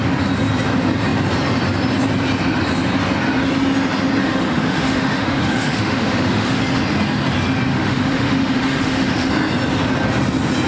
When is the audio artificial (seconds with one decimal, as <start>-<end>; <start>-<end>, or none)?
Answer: 4.2-6.6; 7.7-9.3